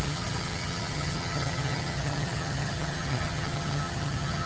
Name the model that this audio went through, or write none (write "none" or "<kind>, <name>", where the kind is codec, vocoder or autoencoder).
vocoder, HiFi-GAN